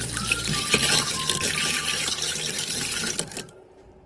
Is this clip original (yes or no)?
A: no